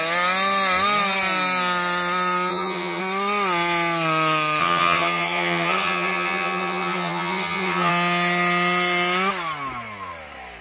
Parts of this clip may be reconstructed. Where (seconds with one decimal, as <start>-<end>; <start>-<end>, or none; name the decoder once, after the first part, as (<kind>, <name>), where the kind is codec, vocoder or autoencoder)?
2.5-3.0 (vocoder, HiFi-GAN); 4.6-7.9

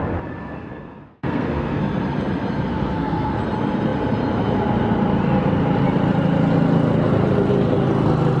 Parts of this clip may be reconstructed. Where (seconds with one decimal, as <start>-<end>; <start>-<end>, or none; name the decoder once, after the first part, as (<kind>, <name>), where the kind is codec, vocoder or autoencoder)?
0.4-1.8 (codec, SNAC); 2.7-3.4

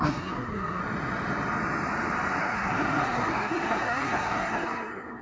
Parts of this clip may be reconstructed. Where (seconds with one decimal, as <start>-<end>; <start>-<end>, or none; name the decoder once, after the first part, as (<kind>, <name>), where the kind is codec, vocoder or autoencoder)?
0.0-0.8 (codec, SNAC); 2.4-5.2

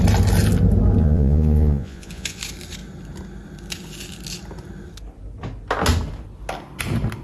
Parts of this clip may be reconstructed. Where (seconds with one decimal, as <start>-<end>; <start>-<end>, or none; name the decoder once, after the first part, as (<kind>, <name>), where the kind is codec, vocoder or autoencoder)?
1.0-2.4 (vocoder, Vocos)